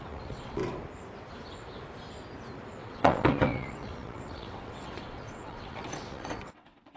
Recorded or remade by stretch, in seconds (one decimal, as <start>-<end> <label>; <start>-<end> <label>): 0.0-0.6 remade; 0.6-2.8 recorded; 2.8-7.0 remade